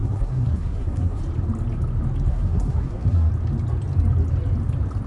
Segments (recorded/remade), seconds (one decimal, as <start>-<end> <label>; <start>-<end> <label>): 0.0-1.2 remade; 1.2-2.3 recorded; 2.3-3.3 remade; 3.3-5.1 recorded